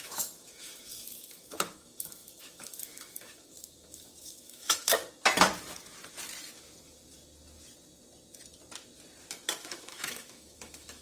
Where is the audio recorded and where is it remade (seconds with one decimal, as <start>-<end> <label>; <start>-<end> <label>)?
0.0-5.0 remade; 5.0-9.6 recorded; 9.6-11.0 remade